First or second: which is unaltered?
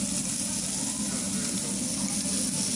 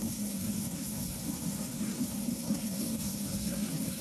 first